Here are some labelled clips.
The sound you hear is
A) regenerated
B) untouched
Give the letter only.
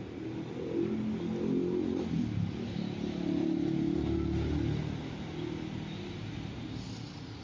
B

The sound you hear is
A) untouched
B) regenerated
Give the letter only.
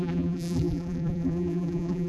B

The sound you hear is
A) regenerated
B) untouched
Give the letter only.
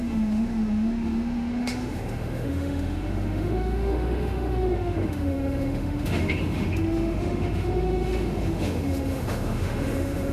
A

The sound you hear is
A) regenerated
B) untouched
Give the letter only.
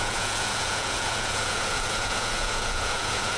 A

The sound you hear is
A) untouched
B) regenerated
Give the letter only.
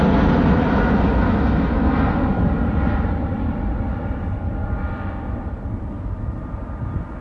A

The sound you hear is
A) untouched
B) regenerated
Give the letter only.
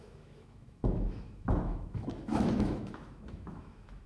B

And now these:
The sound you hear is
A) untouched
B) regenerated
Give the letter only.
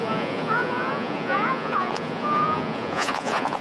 B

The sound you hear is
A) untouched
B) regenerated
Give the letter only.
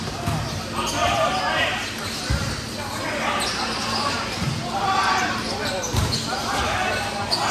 A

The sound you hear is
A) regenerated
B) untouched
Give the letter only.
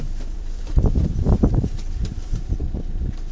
A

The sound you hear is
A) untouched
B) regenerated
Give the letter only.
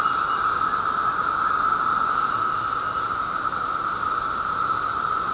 A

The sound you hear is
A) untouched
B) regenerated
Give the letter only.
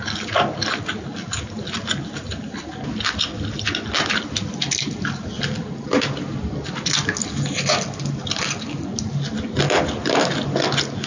A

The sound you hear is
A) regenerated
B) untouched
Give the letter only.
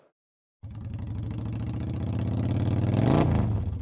B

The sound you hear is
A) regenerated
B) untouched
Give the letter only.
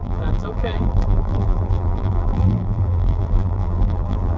A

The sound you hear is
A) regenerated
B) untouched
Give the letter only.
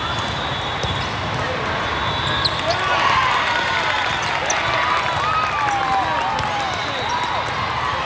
B